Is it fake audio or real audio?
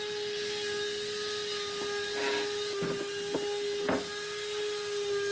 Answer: real